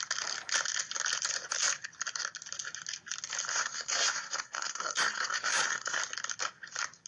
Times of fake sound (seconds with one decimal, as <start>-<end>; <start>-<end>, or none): 3.5-6.0